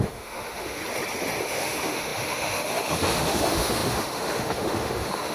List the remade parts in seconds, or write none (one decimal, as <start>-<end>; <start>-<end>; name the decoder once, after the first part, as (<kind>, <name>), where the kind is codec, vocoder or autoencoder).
0.0-0.8 (autoencoder, DAC-VAE); 1.4-5.3